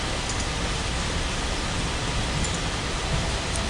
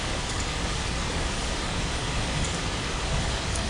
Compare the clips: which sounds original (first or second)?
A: first